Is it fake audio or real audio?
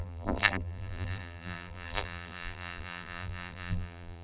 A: fake